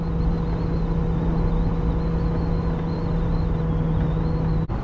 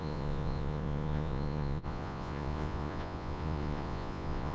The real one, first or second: first